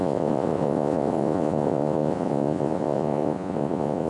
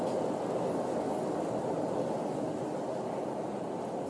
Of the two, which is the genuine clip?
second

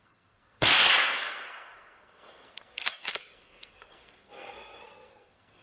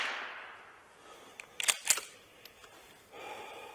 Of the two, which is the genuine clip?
second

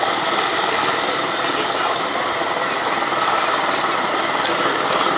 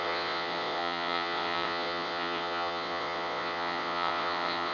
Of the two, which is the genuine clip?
first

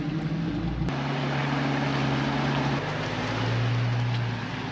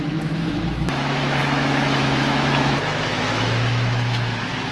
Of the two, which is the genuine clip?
first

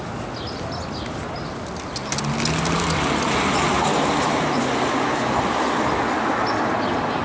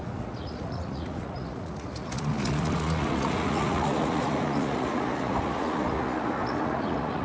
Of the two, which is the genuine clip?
first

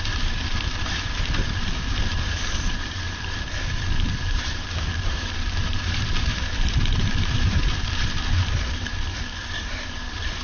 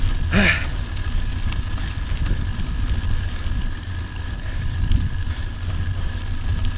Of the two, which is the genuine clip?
second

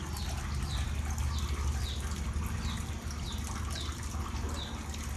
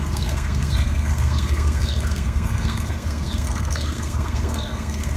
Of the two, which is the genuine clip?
first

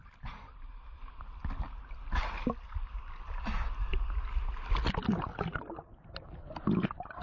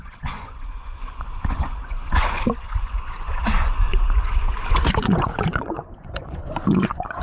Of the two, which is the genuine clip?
first